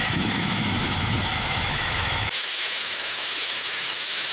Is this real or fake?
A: fake